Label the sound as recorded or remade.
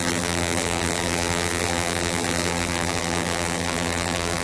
remade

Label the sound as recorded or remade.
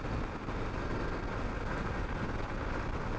recorded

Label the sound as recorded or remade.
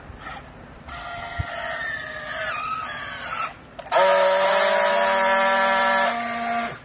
recorded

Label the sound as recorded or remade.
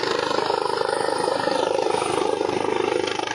remade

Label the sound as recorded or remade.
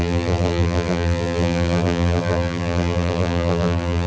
remade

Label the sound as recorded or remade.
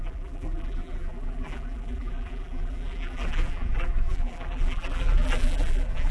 remade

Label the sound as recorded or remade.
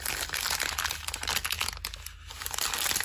recorded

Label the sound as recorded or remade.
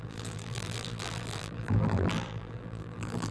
remade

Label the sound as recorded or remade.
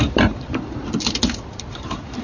remade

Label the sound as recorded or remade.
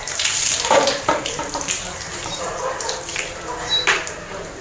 remade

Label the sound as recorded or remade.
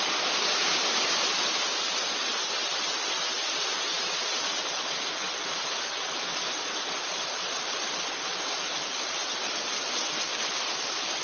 remade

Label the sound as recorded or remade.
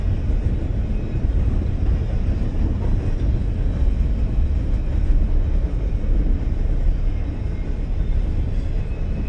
recorded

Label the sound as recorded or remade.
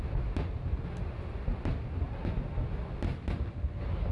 recorded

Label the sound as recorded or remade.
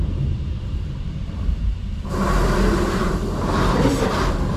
remade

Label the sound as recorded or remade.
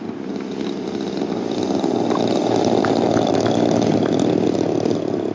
recorded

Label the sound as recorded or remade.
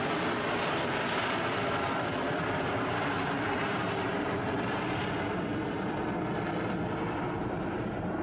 remade